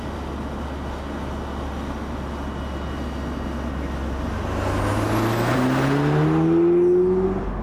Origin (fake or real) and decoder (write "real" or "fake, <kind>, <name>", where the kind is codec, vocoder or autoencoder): real